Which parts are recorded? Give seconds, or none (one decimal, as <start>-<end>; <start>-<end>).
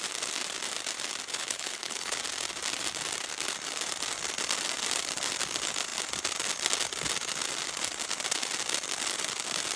0.0-1.3; 2.2-9.8